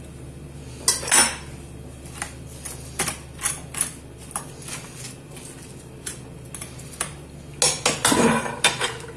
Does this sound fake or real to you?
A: real